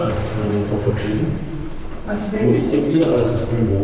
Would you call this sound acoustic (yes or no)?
no